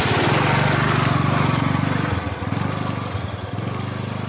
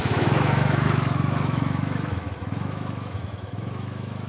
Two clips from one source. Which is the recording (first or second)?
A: first